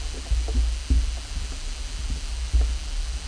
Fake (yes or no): no